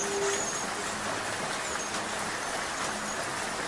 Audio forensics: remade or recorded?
recorded